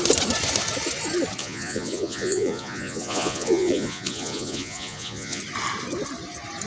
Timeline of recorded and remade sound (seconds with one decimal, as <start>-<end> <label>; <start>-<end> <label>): 0.0-1.4 recorded; 1.4-5.4 remade; 5.4-6.7 recorded